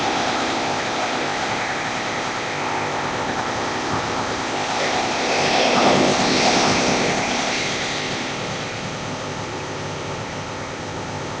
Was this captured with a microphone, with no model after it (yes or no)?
no